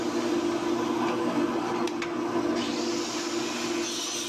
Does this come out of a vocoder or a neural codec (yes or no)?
no